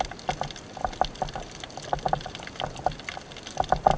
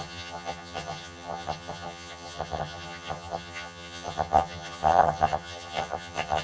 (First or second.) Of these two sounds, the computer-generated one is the second